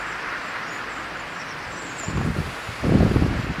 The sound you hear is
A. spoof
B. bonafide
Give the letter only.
B